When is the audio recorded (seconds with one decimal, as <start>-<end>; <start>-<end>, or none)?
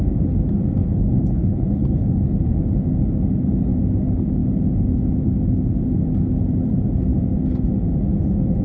0.0-0.8; 2.5-8.6